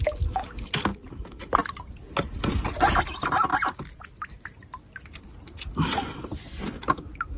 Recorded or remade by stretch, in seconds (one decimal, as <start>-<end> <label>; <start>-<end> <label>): 0.0-7.4 recorded